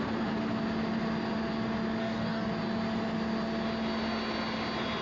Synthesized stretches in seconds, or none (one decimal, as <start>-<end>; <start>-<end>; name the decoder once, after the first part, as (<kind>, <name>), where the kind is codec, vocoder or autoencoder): 2.0-2.5 (codec, DAC)